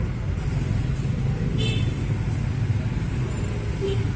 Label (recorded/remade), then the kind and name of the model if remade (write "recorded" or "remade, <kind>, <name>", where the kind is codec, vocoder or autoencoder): recorded